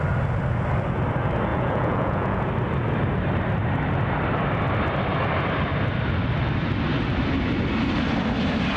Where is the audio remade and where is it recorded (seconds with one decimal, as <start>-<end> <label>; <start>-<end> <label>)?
0.0-1.5 recorded; 1.5-2.5 remade; 2.5-8.8 recorded